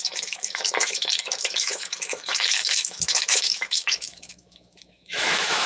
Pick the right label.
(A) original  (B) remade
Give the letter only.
B